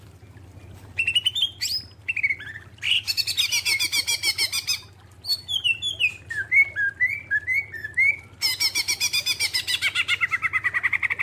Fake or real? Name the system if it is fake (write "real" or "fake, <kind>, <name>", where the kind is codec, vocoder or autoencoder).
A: real